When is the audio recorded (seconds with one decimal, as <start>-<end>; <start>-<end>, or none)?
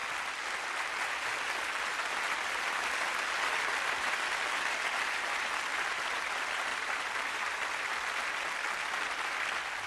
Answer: 0.0-6.7; 7.6-9.9